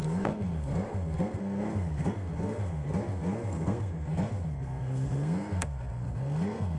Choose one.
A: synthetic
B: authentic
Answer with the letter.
A